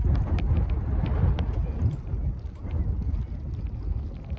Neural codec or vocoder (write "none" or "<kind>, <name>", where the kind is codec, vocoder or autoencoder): none